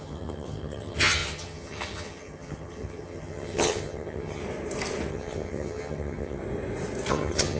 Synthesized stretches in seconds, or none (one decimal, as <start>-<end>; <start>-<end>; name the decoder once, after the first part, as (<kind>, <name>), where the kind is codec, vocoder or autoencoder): 0.0-4.4 (vocoder, HiFi-GAN); 5.1-6.4; 7.1-7.6